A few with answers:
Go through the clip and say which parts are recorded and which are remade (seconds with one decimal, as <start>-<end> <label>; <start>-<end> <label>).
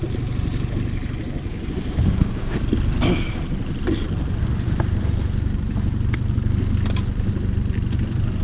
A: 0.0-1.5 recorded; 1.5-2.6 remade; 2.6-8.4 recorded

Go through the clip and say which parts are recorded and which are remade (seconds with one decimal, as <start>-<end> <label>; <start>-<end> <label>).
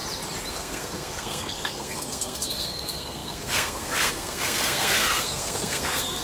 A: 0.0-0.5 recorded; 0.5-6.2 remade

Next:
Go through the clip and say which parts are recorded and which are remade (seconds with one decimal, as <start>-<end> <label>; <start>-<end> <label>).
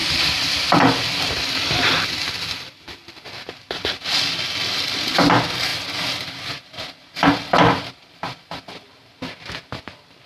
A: 0.0-3.3 remade; 3.3-5.7 recorded; 5.7-6.6 remade; 6.6-10.3 recorded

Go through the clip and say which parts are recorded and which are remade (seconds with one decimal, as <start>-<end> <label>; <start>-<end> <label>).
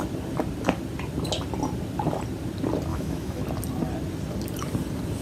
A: 0.0-2.9 recorded; 2.9-3.4 remade; 3.4-5.2 recorded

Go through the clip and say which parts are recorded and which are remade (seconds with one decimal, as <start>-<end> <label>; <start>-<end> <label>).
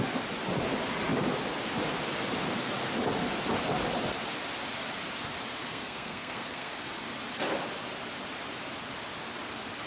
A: 0.0-5.7 recorded; 5.7-6.7 remade; 6.7-9.9 recorded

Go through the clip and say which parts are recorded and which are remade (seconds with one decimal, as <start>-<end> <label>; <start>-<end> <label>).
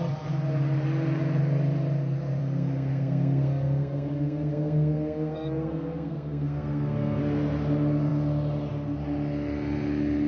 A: 0.0-2.4 recorded; 2.4-7.2 remade; 7.2-10.3 recorded